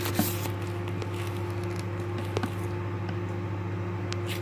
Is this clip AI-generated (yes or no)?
no